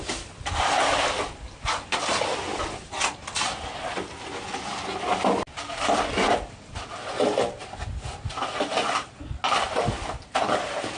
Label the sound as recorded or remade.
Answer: recorded